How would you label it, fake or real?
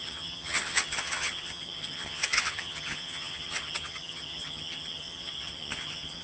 fake